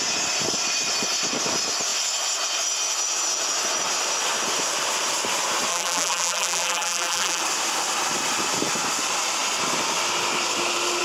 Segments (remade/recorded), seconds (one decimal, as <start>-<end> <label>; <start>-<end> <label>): 0.0-5.7 recorded; 5.7-7.4 remade; 7.4-11.0 recorded